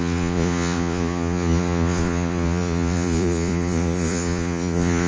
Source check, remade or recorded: remade